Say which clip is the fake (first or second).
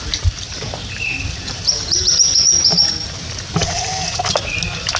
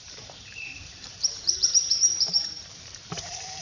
second